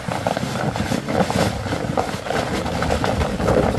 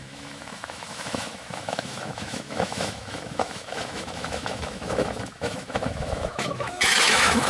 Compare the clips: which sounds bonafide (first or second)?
first